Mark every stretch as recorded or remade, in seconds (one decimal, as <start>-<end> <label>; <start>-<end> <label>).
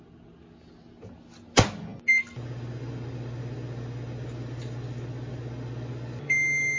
0.0-6.8 recorded